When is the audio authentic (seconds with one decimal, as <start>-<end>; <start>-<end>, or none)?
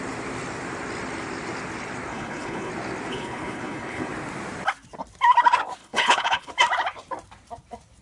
0.0-2.1; 2.7-3.1; 4.1-5.8; 6.5-8.0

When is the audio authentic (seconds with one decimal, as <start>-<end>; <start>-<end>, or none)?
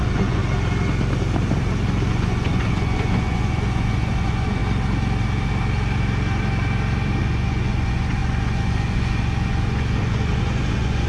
0.4-2.1; 4.6-7.2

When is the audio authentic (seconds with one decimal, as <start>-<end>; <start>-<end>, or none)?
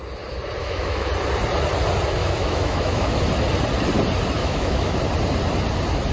0.0-0.6; 1.1-2.2; 3.2-4.4; 5.0-6.1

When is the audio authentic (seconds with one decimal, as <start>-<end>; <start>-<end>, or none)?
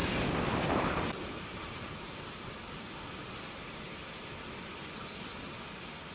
0.0-6.1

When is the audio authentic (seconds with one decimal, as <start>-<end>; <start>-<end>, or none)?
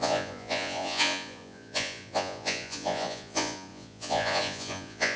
none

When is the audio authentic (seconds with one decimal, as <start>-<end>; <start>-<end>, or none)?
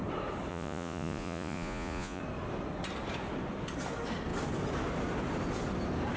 0.0-0.5; 2.2-6.2